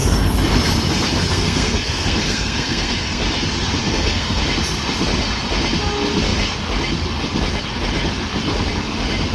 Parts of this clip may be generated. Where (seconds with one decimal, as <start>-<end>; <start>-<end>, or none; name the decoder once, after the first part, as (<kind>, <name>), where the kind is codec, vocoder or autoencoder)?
1.3-3.2 (codec, SNAC); 3.8-4.4